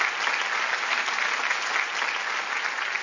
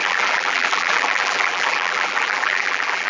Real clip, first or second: first